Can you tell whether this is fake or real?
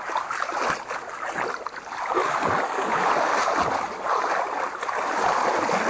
real